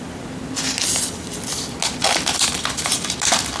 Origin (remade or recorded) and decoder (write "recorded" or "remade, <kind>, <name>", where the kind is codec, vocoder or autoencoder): recorded